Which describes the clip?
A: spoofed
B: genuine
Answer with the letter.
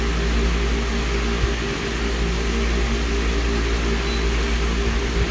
B